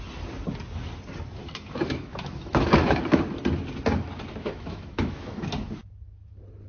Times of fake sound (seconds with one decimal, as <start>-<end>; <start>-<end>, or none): 1.4-3.0; 4.4-5.5